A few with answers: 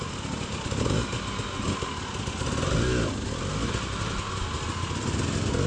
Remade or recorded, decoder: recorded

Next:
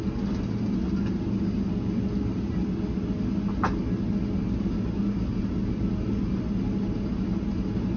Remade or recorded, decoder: recorded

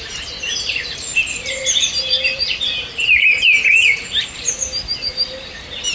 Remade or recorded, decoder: remade, vocoder, BigVGAN v2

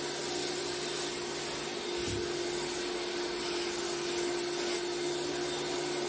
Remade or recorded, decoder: recorded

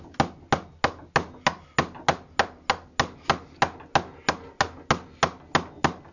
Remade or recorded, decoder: recorded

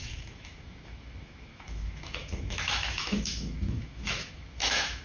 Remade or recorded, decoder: remade, autoencoder, DAC-VAE